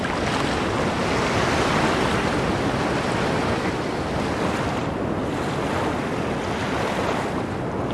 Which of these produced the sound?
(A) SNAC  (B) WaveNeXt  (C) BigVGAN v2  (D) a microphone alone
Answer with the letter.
D